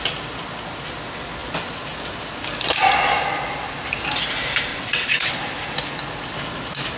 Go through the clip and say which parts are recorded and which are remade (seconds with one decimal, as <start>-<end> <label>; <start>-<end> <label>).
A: 0.0-4.7 recorded; 4.7-5.4 remade; 5.4-7.0 recorded